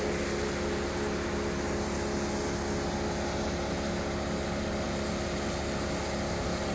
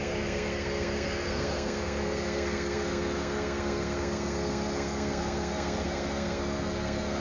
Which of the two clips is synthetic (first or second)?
second